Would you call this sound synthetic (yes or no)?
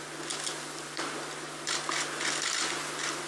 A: no